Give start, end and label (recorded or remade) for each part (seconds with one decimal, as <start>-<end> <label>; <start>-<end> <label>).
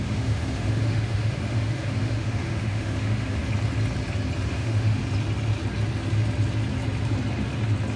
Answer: 0.0-3.4 remade; 3.4-4.5 recorded; 4.5-5.0 remade; 5.0-8.0 recorded